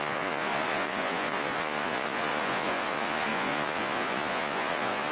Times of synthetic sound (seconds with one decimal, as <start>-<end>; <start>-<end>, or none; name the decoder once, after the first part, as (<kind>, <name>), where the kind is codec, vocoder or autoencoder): 0.0-5.1 (vocoder, Vocos)